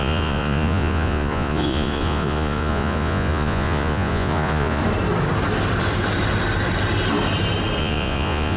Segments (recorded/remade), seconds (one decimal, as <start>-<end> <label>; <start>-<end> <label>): 0.0-4.8 remade; 4.8-7.8 recorded; 7.8-8.6 remade